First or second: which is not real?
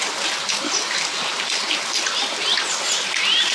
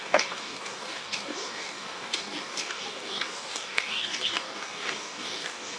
second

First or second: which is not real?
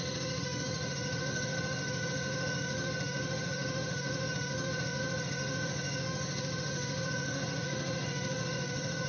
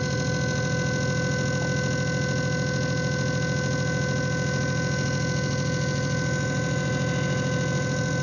first